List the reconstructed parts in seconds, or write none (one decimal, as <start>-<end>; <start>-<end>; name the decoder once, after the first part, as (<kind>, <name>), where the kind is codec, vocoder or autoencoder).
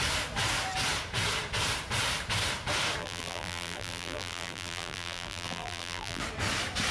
3.0-6.2 (vocoder, BigVGAN v2)